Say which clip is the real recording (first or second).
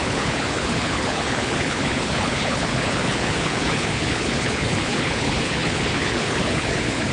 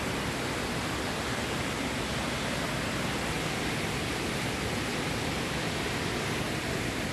second